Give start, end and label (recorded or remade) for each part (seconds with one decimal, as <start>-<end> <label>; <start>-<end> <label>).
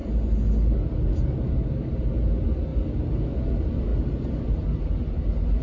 0.0-5.6 recorded